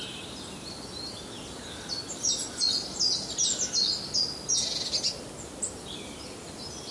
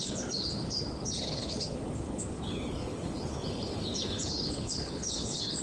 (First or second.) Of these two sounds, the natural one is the first